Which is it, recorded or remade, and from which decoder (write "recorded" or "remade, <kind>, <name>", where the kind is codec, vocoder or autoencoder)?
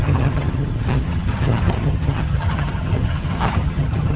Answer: remade, vocoder, HiFi-GAN